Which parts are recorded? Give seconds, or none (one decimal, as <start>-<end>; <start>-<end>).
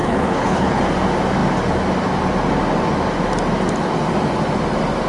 0.9-5.1